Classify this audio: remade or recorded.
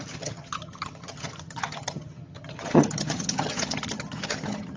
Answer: remade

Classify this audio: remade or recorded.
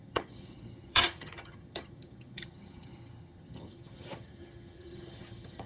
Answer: remade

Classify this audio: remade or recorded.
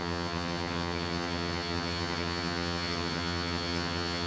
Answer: remade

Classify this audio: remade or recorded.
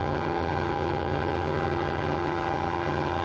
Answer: remade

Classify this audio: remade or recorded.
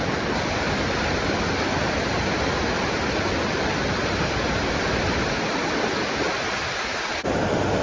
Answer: recorded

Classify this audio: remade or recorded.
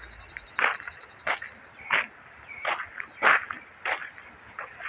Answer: recorded